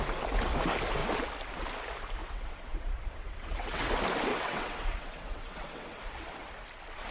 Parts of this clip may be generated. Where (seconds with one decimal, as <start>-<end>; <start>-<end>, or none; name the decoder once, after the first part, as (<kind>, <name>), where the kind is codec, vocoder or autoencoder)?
2.2-3.9 (vocoder, WaveNeXt); 4.3-6.5